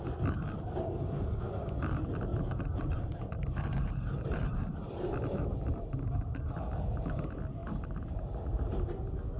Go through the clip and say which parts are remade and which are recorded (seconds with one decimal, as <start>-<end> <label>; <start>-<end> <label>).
0.0-2.3 recorded; 2.3-6.0 remade; 6.0-7.6 recorded; 7.6-8.9 remade; 8.9-9.4 recorded